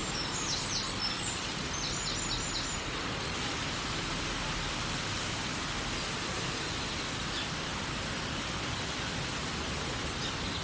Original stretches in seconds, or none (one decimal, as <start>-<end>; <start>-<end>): 0.0-10.6